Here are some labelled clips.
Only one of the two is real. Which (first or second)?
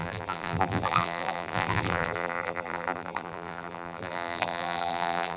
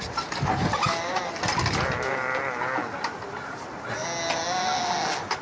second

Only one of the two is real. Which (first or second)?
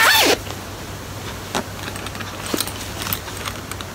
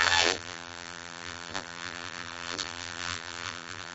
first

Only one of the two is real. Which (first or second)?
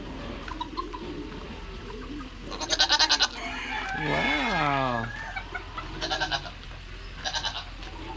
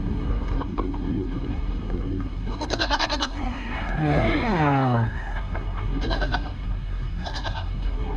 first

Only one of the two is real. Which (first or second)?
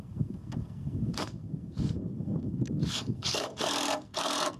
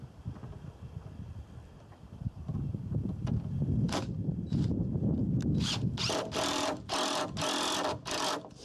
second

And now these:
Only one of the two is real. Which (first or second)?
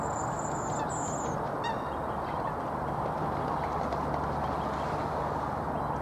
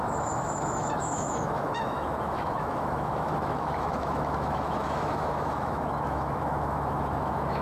first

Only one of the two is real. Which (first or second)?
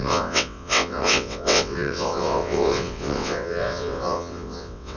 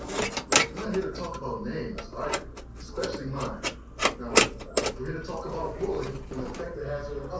second